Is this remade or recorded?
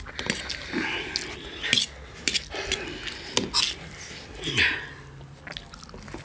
recorded